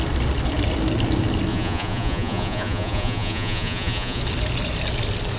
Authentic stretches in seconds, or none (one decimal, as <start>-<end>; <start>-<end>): 0.0-1.5; 4.2-5.4